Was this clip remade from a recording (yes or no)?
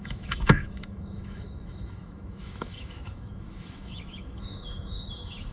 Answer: yes